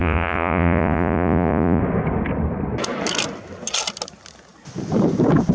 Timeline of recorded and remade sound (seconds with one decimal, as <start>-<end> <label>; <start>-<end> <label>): 0.0-1.8 remade; 1.8-5.5 recorded